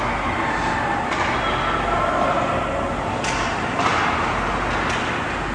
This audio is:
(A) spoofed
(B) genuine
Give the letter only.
B